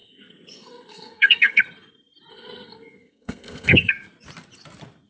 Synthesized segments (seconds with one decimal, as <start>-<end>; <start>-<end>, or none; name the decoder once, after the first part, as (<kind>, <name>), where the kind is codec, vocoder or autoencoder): 0.0-1.6 (codec, SNAC); 2.3-3.9